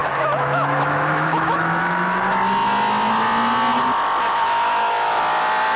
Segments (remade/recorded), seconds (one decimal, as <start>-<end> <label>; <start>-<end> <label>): 0.0-2.2 remade; 2.2-4.3 recorded; 4.3-5.2 remade; 5.2-5.8 recorded